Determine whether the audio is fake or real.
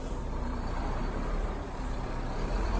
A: fake